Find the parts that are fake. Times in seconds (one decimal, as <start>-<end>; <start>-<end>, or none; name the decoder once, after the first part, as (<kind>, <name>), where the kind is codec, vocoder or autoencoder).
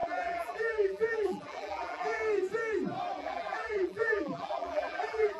0.0-2.2 (vocoder, BigVGAN v2); 3.2-5.4